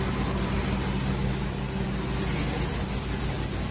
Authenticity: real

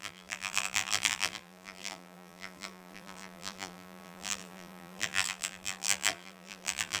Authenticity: fake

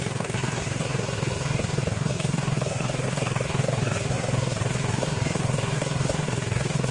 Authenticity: fake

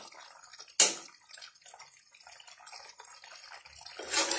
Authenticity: real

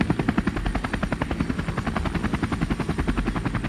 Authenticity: real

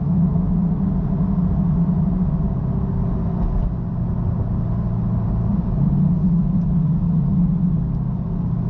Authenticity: real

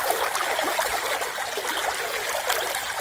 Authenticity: real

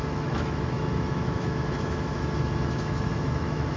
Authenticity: fake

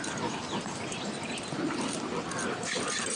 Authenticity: real